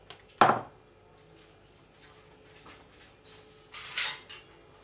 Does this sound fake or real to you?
real